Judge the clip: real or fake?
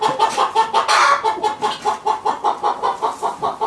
real